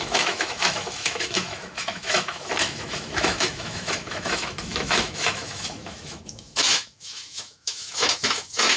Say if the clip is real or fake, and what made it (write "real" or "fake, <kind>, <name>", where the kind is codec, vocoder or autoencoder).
fake, autoencoder, DAC-VAE